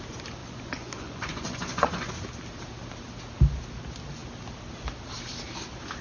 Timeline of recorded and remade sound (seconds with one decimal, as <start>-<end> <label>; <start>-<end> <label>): 0.0-0.4 recorded; 0.4-2.1 remade; 2.1-6.0 recorded